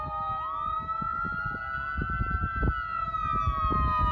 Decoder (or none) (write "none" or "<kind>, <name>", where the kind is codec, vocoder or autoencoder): none